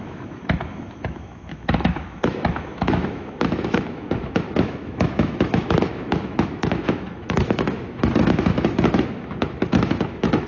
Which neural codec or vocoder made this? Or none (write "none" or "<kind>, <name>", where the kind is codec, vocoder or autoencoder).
autoencoder, DAC-VAE